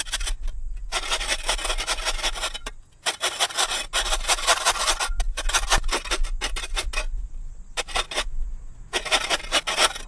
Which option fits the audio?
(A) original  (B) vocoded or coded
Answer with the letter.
A